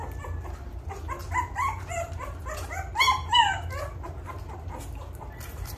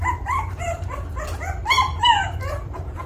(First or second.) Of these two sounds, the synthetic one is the second